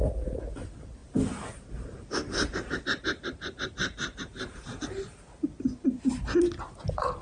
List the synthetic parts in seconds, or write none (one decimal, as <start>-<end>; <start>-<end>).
1.0-5.3